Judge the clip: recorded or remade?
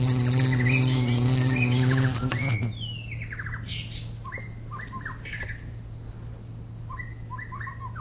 recorded